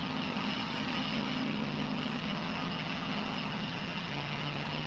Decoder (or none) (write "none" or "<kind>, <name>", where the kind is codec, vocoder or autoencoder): vocoder, HiFi-GAN